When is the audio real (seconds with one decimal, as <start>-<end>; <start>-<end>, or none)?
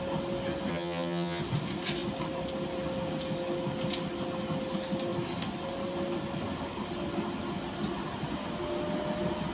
0.0-0.7; 1.4-9.5